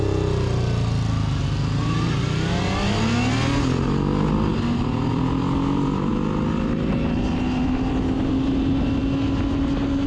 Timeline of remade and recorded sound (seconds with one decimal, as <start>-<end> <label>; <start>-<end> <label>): 0.0-10.1 recorded